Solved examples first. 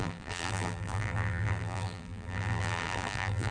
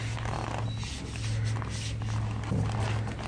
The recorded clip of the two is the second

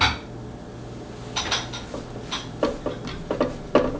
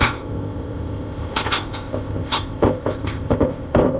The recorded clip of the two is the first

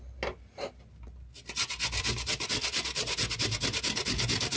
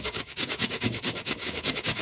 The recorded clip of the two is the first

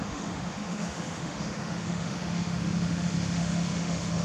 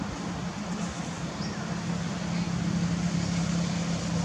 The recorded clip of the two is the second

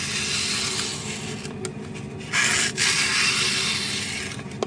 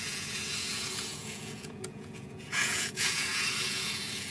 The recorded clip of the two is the first